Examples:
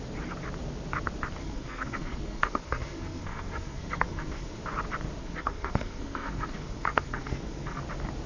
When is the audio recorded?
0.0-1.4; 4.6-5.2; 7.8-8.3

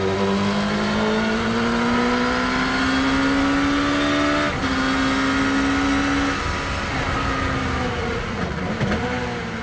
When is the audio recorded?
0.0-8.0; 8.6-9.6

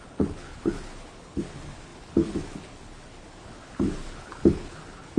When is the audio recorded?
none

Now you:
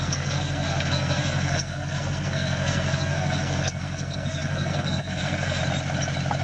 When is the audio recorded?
5.6-6.4